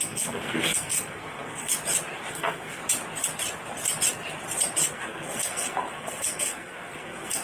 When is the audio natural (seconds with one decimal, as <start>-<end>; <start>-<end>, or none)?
1.7-2.3; 2.8-4.9